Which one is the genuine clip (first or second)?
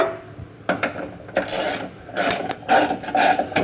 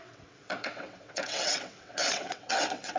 first